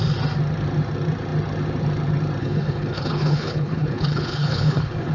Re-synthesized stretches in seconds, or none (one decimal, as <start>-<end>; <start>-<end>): 2.4-5.1